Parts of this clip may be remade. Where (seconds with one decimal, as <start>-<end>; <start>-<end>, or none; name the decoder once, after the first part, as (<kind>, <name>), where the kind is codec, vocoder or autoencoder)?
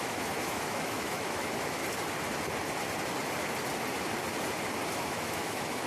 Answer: 0.0-1.8 (autoencoder, DAC-VAE); 4.9-5.9